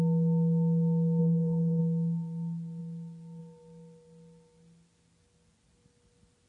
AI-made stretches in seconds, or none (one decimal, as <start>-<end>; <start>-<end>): 1.2-1.8